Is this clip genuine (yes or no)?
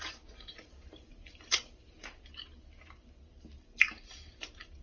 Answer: no